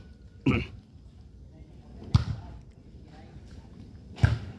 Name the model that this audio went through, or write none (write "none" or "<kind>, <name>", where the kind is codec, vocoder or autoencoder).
none